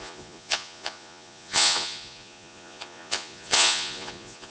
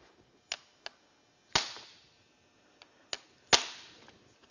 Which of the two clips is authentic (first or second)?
second